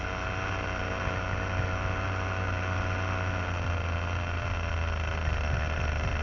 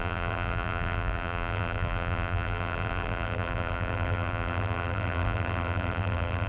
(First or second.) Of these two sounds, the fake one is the second